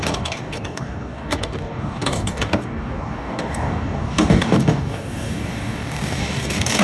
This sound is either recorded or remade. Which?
remade